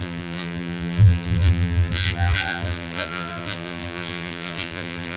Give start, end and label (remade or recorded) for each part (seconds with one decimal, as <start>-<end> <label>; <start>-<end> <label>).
0.0-5.2 remade